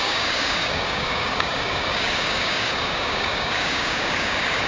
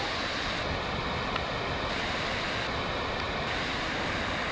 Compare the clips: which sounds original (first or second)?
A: second